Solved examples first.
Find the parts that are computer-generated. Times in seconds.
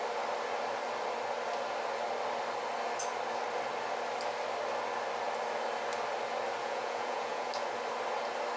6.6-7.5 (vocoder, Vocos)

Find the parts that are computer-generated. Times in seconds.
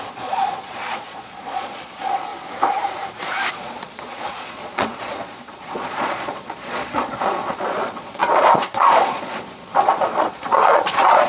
0.0-2.3 (vocoder, Vocos); 3.5-11.3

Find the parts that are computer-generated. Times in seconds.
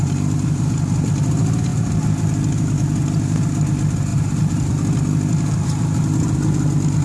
4.1-4.7 (vocoder, BigVGAN v2)